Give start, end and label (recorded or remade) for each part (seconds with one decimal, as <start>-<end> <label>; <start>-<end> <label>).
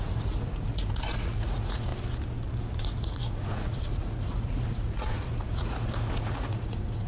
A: 0.0-1.9 remade; 1.9-2.8 recorded; 2.8-7.1 remade